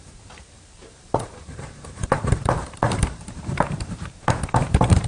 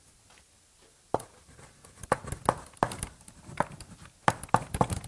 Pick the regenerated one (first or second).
first